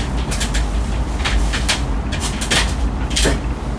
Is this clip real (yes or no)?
yes